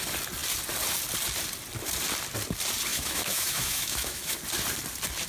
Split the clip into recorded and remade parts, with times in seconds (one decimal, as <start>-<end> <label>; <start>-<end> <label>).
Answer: 0.0-2.9 recorded; 2.9-4.4 remade; 4.4-5.3 recorded